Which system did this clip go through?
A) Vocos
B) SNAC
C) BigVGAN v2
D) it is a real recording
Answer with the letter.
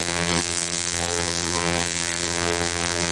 C